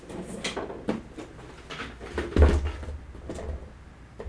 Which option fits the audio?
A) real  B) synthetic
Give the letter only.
A